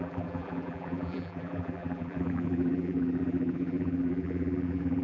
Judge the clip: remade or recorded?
remade